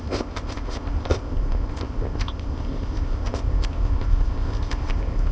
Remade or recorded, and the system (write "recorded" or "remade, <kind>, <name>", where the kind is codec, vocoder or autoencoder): remade, codec, ZipCodec